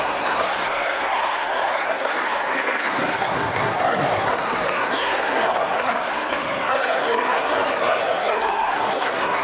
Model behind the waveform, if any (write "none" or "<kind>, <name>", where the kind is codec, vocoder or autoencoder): codec, SNAC